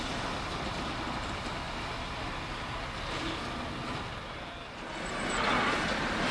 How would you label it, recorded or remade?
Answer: recorded